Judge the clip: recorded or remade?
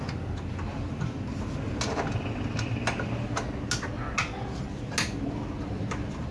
recorded